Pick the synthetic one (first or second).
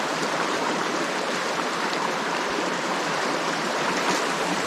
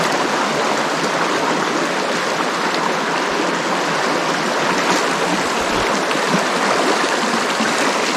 first